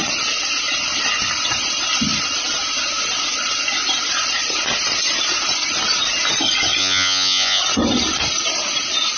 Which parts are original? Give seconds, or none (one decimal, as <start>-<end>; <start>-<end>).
0.0-6.8; 7.6-9.2